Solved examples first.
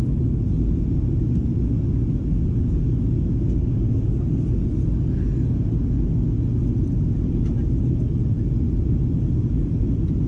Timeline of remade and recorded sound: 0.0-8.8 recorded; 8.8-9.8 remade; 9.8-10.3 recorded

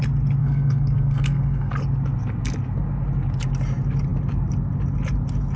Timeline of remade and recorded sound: 0.0-0.4 recorded; 0.4-1.7 remade; 1.7-5.6 recorded

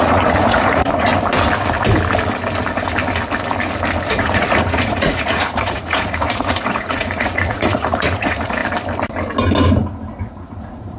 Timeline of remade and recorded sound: 0.0-1.1 remade; 1.1-4.1 recorded; 4.1-8.6 remade; 8.6-10.2 recorded; 10.2-11.0 remade

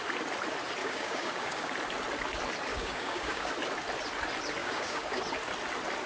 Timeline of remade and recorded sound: 0.0-0.8 recorded; 0.8-1.7 remade; 1.7-2.7 recorded; 2.7-3.5 remade; 3.5-4.6 recorded; 4.6-5.2 remade; 5.2-6.1 recorded

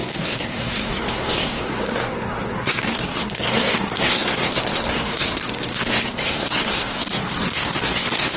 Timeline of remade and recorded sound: 0.0-8.4 remade

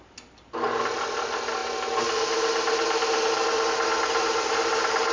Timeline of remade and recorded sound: 0.0-5.1 recorded

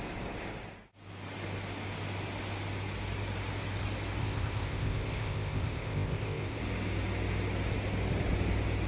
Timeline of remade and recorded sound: 0.0-4.2 recorded; 4.2-6.6 remade; 6.6-8.9 recorded

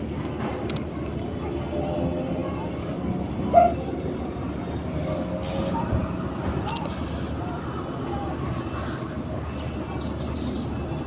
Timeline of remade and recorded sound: 0.0-2.4 recorded; 2.4-6.5 remade; 6.5-11.1 recorded